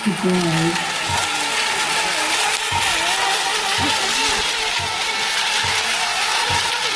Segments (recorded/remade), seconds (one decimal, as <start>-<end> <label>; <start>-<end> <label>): 0.0-7.0 recorded